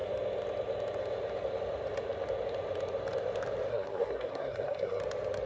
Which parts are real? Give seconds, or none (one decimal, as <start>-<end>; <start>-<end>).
0.0-3.7; 5.0-5.5